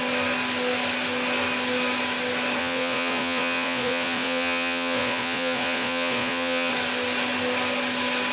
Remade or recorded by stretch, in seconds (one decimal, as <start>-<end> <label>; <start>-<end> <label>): 0.0-2.6 recorded; 2.6-6.7 remade; 6.7-8.3 recorded